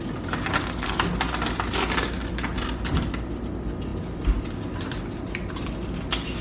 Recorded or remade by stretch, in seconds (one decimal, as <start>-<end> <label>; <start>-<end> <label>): 0.0-6.4 recorded

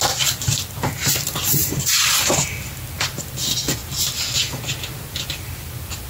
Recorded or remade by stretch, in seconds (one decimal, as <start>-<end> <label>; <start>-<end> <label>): 0.0-1.6 remade; 1.6-2.6 recorded; 2.6-3.8 remade; 3.8-5.2 recorded; 5.2-6.1 remade

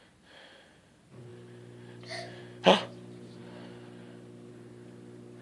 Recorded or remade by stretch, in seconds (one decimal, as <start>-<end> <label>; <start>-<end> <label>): 0.0-1.3 recorded; 1.3-2.4 remade; 2.4-3.4 recorded; 3.4-4.5 remade; 4.5-5.4 recorded